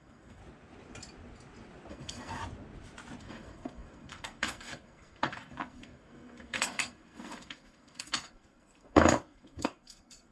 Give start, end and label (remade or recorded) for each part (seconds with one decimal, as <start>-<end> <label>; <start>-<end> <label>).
0.0-0.4 remade; 0.4-1.9 recorded; 1.9-2.4 remade; 2.4-3.2 recorded; 3.2-10.3 remade